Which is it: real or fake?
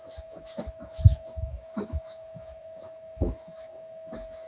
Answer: fake